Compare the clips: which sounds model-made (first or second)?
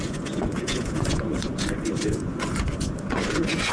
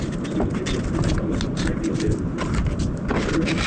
first